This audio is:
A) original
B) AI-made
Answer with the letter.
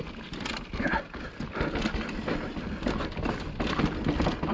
A